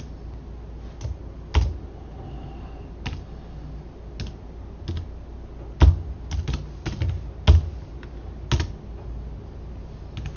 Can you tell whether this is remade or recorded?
recorded